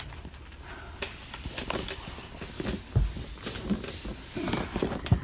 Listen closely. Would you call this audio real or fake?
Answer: real